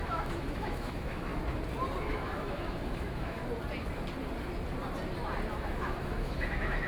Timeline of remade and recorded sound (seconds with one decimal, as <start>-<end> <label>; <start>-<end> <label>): 0.0-1.3 remade; 1.3-2.0 recorded; 2.0-3.4 remade; 3.4-5.5 recorded; 5.5-6.9 remade